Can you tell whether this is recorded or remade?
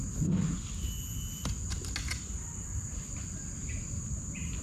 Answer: recorded